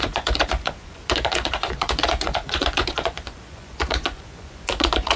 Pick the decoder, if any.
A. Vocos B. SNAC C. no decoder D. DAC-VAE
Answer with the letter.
A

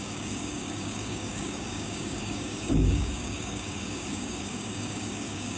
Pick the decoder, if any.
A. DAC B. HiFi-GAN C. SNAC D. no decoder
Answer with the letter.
A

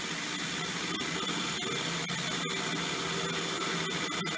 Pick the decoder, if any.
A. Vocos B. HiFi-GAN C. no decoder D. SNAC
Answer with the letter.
C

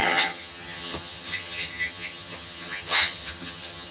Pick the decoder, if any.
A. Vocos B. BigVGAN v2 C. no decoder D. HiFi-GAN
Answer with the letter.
D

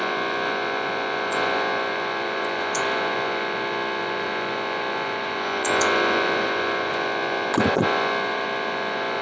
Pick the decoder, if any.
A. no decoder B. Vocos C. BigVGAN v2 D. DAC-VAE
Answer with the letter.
B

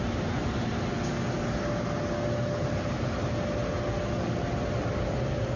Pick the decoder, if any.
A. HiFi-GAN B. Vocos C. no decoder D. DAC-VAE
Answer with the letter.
C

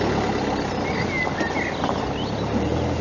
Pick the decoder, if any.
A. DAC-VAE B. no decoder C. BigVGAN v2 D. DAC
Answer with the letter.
B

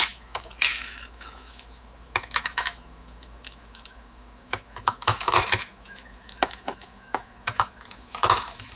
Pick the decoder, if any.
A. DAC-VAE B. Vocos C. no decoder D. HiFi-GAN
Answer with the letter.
A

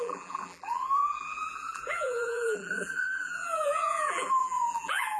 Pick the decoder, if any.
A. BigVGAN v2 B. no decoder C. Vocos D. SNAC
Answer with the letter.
A